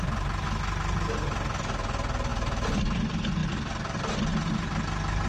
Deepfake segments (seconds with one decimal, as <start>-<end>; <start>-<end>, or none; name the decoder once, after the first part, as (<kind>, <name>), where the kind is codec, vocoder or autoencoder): none